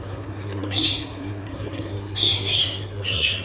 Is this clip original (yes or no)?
no